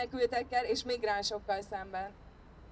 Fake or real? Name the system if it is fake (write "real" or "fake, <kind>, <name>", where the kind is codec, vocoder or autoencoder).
real